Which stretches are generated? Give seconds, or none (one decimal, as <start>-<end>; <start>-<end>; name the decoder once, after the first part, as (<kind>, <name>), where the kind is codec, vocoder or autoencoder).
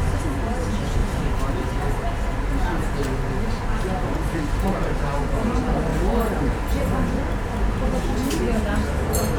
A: 1.0-2.8 (vocoder, BigVGAN v2)